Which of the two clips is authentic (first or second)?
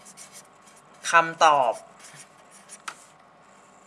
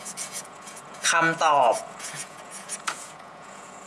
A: first